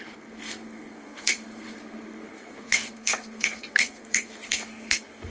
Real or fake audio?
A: fake